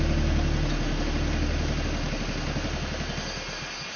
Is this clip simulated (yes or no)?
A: no